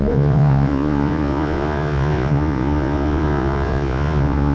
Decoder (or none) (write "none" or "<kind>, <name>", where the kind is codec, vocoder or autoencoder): vocoder, Vocos